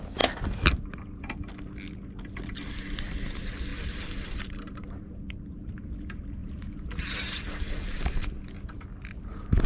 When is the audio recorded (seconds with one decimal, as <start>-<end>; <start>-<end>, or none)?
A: 0.0-3.7; 5.8-6.4; 7.1-9.7